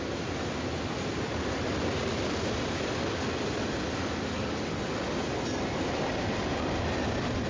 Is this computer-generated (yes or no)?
yes